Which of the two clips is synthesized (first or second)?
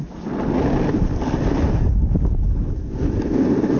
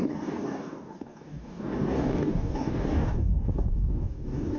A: second